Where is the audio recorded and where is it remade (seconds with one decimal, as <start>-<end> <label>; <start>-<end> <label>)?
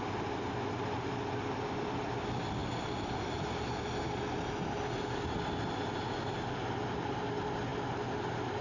0.0-8.6 recorded